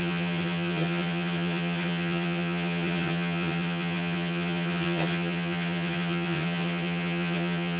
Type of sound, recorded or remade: remade